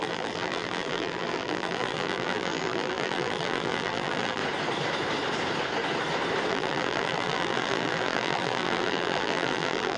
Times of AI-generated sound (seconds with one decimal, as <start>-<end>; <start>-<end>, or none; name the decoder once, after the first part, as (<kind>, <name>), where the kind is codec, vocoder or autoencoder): 0.0-4.4 (vocoder, BigVGAN v2); 6.5-10.0

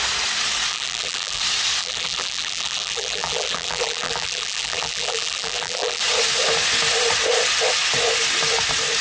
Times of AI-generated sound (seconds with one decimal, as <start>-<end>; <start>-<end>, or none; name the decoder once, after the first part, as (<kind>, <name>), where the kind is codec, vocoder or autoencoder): 0.7-1.4 (vocoder, BigVGAN v2); 1.8-6.0

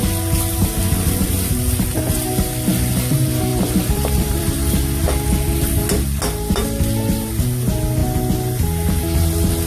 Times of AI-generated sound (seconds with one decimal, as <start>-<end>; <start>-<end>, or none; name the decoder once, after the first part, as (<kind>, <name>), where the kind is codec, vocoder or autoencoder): 3.5-4.5 (vocoder, BigVGAN v2)